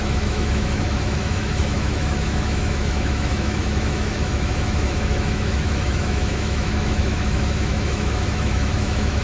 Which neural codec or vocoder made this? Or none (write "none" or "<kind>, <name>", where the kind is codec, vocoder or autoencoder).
autoencoder, DAC-VAE